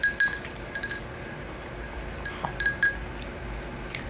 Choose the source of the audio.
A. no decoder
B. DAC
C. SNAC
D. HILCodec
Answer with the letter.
A